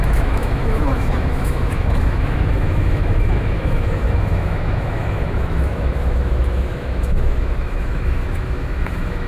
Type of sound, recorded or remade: remade